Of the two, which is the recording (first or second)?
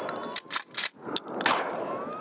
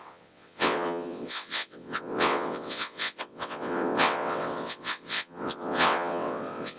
first